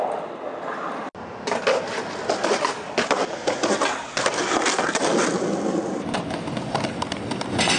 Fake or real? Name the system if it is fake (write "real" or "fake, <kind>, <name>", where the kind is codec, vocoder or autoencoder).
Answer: real